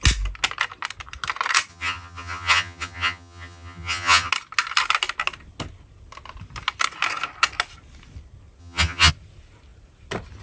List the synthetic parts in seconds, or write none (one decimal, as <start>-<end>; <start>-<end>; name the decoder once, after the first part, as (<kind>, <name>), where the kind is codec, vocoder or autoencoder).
1.7-4.3 (vocoder, HiFi-GAN); 8.6-9.1